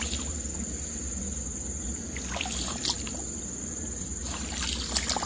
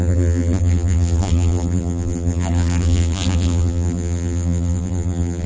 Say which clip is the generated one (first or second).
second